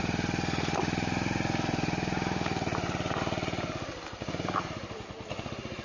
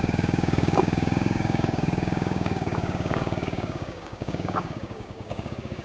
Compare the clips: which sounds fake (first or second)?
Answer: second